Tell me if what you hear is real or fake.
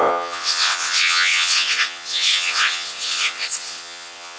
fake